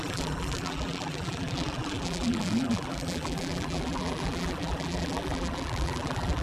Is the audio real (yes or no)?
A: no